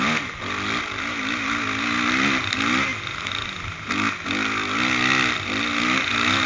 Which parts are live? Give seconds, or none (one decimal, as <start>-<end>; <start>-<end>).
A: 0.0-6.5